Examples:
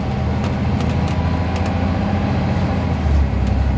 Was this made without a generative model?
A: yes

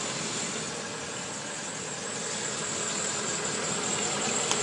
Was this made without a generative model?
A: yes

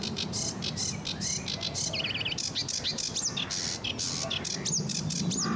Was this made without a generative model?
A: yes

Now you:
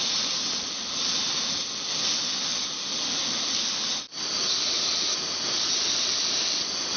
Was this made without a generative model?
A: yes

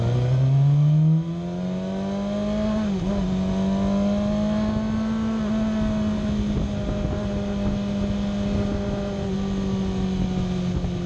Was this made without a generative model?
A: yes